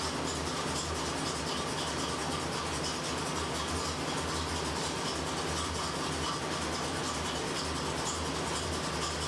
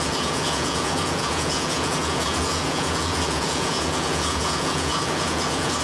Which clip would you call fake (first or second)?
second